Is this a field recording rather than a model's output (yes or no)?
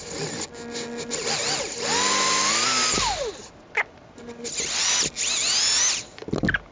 yes